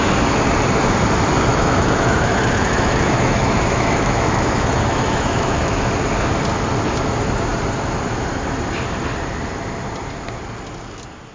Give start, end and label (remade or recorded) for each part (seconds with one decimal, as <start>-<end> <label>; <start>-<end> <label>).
0.0-1.5 recorded; 1.5-5.9 remade; 5.9-11.3 recorded